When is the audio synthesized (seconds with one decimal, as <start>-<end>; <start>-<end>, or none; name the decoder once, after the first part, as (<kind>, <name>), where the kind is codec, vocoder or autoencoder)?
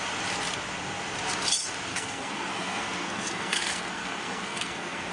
1.9-5.1 (codec, SNAC)